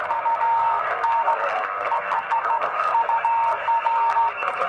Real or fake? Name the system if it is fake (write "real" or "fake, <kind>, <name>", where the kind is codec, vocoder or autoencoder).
fake, codec, SNAC